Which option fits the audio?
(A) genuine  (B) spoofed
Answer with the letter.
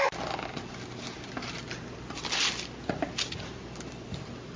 A